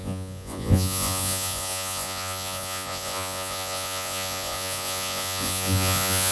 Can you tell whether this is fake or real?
fake